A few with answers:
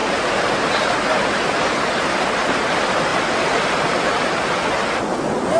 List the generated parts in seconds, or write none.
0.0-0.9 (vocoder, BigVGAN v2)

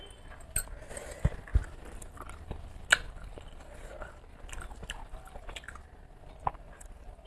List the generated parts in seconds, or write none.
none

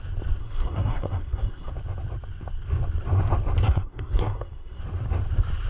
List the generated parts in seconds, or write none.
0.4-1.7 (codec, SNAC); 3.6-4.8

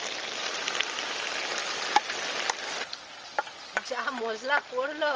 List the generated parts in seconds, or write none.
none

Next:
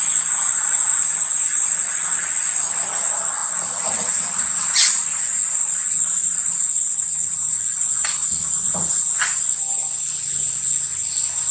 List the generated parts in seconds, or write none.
8.2-8.9 (vocoder, Vocos)

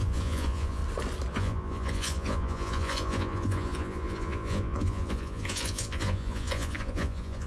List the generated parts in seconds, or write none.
0.0-0.8 (vocoder, Vocos); 1.3-7.5

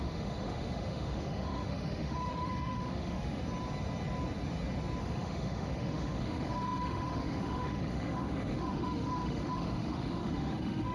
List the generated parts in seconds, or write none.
0.0-3.4 (autoencoder, DAC-VAE); 5.0-10.9

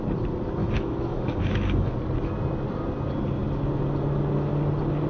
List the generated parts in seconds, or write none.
0.6-1.9 (autoencoder, DAC-VAE)